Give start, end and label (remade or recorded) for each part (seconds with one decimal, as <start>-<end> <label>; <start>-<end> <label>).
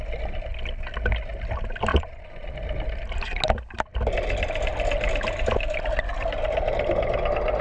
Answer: 0.0-1.9 recorded; 1.9-2.5 remade; 2.5-7.6 recorded